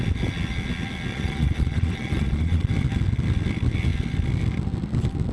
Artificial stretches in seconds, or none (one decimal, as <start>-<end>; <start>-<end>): 1.1-2.7